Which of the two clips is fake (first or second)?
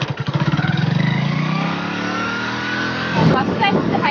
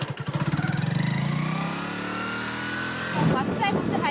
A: first